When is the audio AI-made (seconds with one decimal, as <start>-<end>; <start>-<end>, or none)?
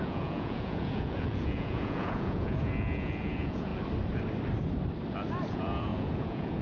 0.0-3.7; 5.5-6.6